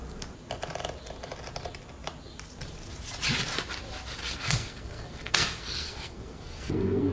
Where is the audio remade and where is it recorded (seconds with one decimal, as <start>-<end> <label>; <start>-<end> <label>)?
0.0-4.2 recorded; 4.2-7.1 remade